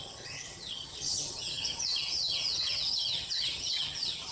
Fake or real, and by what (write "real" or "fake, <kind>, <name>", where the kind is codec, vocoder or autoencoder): fake, vocoder, HiFi-GAN